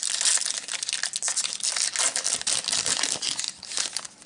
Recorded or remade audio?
recorded